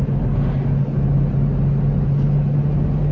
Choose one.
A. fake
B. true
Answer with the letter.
B